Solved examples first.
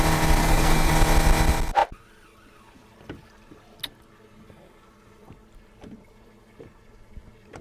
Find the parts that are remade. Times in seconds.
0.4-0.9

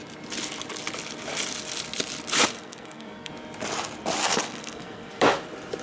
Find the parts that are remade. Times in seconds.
2.5-3.3; 4.2-5.2

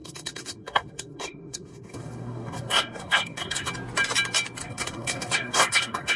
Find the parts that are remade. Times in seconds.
0.0-3.7; 4.6-6.2

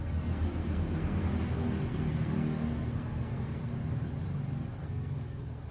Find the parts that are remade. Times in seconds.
0.0-3.7; 4.8-5.7

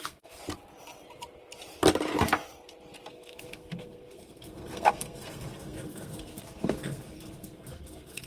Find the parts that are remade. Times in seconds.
0.0-0.4; 3.1-8.3

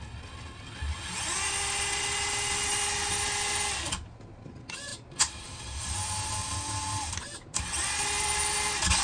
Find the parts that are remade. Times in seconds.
none